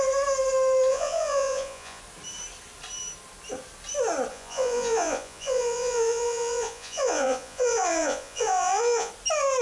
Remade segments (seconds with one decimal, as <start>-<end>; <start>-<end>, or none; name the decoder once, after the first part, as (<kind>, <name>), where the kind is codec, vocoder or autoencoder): 0.9-2.0 (vocoder, Vocos); 4.3-9.1